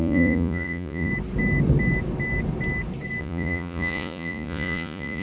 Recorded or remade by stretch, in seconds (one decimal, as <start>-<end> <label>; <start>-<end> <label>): 0.0-1.1 remade; 1.1-3.2 recorded; 3.2-5.2 remade